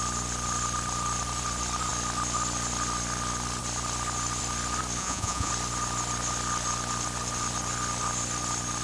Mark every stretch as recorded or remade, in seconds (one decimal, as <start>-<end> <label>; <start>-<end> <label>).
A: 0.0-5.0 recorded; 5.0-5.5 remade; 5.5-8.8 recorded